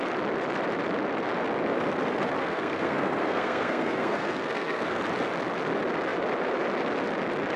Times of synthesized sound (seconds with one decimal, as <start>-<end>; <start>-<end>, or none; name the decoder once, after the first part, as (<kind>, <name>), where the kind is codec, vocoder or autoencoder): 2.4-5.0 (codec, SNAC)